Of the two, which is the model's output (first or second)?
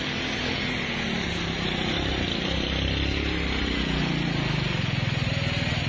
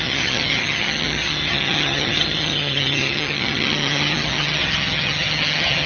second